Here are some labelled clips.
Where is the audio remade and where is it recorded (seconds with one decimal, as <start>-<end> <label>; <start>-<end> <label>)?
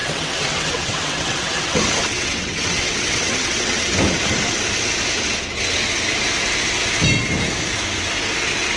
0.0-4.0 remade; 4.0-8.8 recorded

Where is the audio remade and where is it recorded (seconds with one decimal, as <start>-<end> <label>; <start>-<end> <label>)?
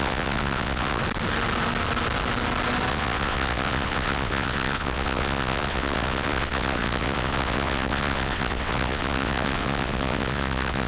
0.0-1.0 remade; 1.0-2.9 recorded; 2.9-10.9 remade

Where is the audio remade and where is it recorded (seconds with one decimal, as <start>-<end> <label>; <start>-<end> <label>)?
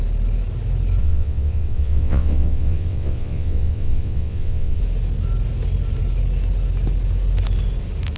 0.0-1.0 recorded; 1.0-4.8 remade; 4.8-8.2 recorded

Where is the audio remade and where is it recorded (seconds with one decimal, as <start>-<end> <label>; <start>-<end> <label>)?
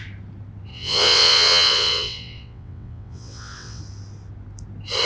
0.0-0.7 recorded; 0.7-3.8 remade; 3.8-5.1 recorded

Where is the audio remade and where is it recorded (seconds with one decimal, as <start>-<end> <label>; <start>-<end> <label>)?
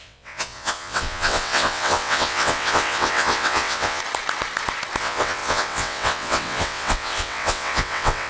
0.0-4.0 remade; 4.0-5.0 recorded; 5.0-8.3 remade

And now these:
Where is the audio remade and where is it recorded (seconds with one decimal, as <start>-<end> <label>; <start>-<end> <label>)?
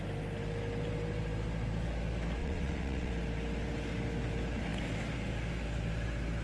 0.0-2.4 recorded; 2.4-3.1 remade; 3.1-6.4 recorded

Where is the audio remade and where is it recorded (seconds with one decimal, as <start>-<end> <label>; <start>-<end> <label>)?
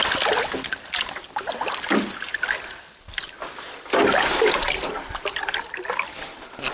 0.0-6.7 recorded